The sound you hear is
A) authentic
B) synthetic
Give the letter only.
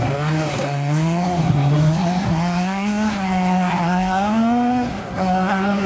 B